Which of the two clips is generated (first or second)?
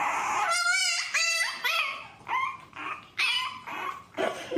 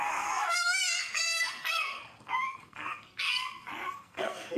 second